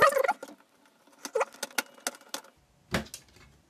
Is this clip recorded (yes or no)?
yes